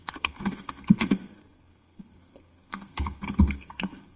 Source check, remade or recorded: remade